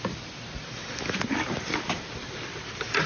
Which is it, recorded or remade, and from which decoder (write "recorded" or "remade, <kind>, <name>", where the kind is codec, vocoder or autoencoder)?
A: recorded